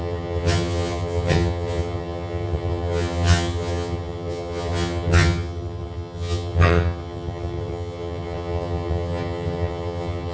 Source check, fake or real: fake